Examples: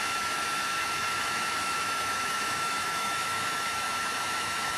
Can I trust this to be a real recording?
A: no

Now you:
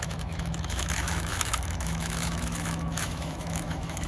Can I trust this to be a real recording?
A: no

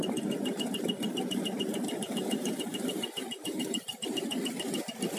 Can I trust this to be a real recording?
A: no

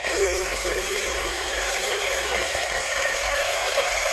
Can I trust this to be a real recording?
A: no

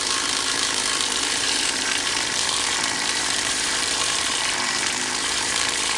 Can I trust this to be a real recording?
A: no